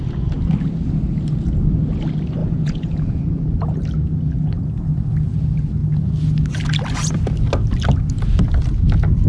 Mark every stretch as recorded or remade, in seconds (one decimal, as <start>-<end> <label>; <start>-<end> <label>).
0.0-2.4 recorded; 2.4-3.6 remade; 3.6-9.3 recorded